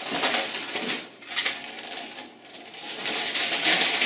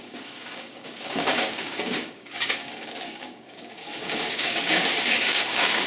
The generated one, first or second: second